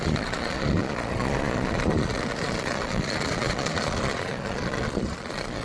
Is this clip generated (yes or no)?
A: yes